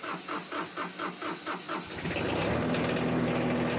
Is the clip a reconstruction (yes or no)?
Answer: no